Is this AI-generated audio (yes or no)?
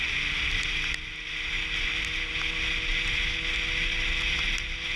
no